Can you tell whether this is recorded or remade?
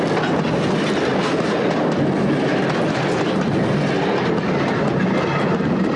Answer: recorded